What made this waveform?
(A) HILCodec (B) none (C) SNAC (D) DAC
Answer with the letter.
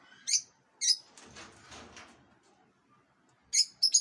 B